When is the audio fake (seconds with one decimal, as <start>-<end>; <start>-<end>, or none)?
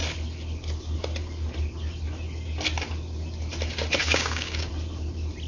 4.0-4.7